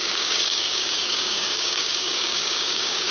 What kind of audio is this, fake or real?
fake